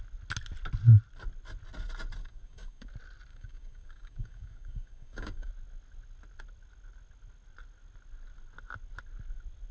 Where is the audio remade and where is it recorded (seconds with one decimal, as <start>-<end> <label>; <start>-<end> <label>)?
0.0-2.2 recorded; 2.2-2.9 remade; 2.9-3.3 recorded; 3.3-5.5 remade; 5.5-9.7 recorded